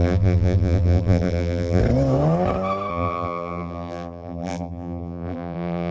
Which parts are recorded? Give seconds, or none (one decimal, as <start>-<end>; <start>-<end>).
1.8-2.9